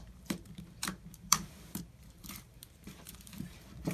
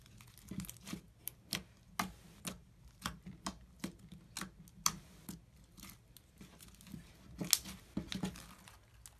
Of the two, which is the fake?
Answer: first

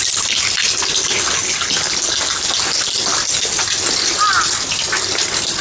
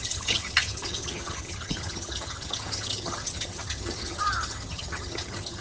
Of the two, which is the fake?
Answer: second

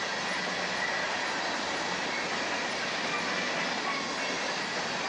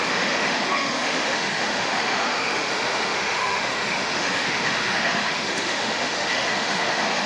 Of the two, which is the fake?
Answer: second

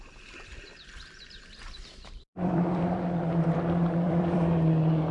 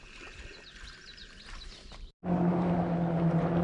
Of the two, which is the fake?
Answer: first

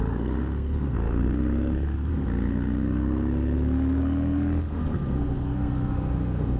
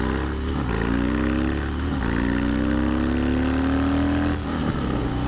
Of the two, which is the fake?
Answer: first